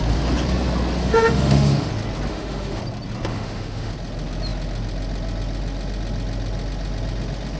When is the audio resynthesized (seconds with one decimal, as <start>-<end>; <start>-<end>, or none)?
1.0-1.9; 2.3-2.8; 3.3-3.9